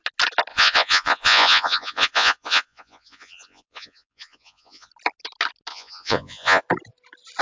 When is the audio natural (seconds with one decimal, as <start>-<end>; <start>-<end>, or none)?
0.0-0.5; 4.9-5.7; 6.6-7.4